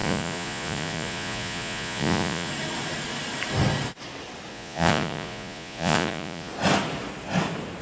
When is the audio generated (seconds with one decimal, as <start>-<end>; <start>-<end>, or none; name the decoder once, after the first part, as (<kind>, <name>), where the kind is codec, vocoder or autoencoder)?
0.0-2.5 (vocoder, Vocos); 4.5-6.5